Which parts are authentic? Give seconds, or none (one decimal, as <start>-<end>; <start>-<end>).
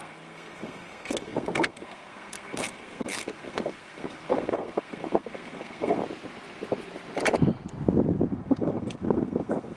6.0-8.3